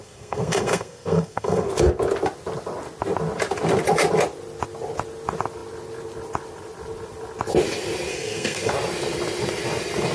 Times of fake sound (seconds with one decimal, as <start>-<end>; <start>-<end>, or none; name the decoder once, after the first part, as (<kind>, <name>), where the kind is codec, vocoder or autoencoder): 0.0-1.7 (codec, SNAC); 8.1-8.7